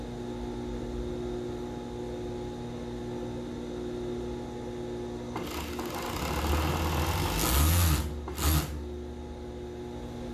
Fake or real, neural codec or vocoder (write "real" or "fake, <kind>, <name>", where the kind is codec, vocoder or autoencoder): real